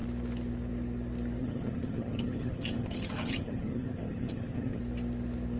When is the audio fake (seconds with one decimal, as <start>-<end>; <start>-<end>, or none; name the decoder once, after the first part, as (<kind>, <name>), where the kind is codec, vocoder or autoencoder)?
1.4-4.8 (vocoder, HiFi-GAN)